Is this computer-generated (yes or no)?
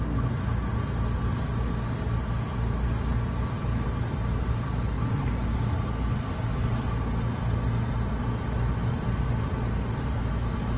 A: no